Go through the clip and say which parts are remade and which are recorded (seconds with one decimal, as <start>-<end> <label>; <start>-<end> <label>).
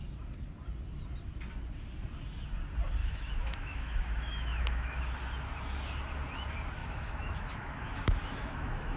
0.0-3.0 recorded; 3.0-5.0 remade; 5.0-6.8 recorded; 6.8-9.0 remade